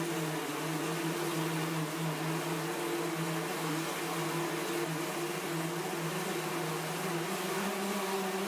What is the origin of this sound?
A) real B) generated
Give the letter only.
A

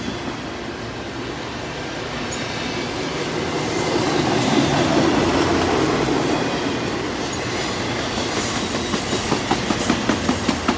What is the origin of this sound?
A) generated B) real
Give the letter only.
B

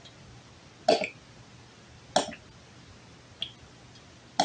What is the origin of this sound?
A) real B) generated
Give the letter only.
A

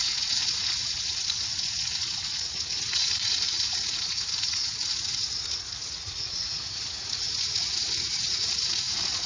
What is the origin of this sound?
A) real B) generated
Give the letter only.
B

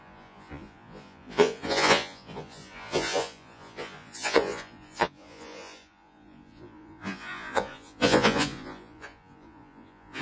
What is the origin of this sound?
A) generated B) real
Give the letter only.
A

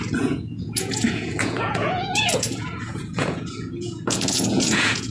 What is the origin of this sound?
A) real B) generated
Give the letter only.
B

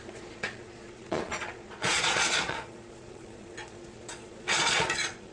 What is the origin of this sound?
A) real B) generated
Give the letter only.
B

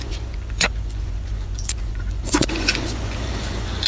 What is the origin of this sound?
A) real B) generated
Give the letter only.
B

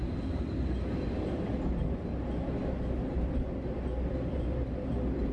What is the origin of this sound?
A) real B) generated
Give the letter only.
A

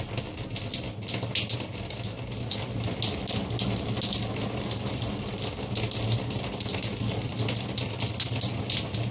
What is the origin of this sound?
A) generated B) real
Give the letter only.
B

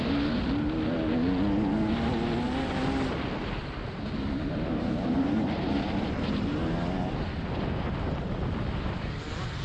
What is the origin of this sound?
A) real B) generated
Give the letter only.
A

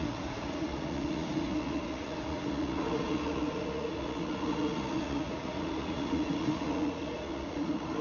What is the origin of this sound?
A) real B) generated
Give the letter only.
B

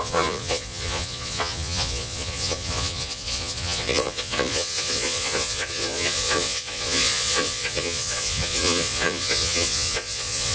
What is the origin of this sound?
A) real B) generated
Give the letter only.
B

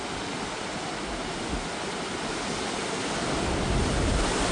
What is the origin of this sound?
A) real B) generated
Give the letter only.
A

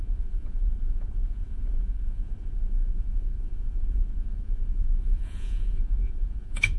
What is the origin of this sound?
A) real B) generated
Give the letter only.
B